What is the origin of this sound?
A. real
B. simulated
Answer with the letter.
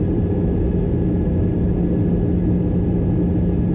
A